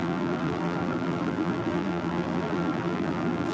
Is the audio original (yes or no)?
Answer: no